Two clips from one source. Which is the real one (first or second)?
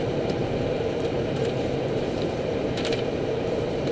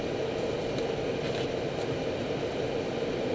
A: second